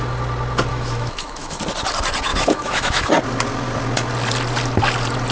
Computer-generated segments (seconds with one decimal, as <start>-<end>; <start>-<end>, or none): 0.7-1.6; 2.3-3.1